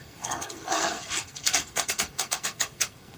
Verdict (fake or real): fake